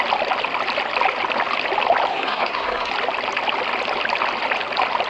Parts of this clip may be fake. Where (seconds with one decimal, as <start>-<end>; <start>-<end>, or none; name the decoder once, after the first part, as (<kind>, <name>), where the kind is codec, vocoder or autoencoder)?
2.1-2.9 (codec, SNAC)